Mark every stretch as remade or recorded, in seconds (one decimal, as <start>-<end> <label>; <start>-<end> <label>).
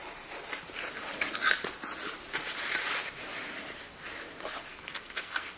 0.0-4.7 recorded; 4.7-5.6 remade